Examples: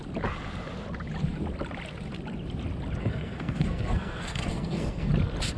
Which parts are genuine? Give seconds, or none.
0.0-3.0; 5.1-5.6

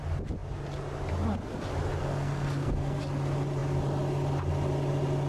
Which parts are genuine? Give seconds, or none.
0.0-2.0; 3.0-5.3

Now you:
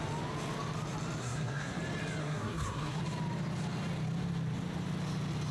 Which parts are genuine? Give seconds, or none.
0.0-1.2; 1.8-2.2; 3.0-5.5

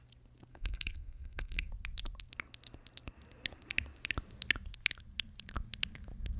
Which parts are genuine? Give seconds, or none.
0.0-0.5; 1.7-6.4

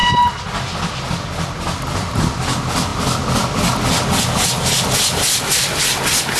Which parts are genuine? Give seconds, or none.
0.0-6.4

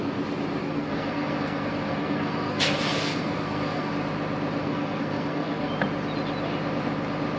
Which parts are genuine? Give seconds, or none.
0.0-0.6; 3.9-4.6; 5.7-7.4

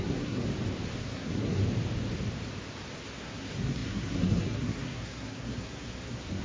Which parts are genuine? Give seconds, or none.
0.4-1.0; 1.6-3.2

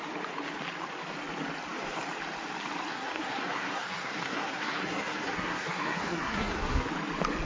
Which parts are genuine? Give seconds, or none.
0.0-2.9; 6.9-7.5